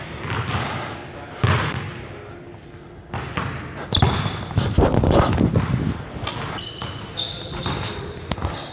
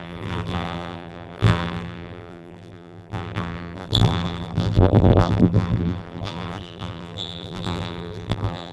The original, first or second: first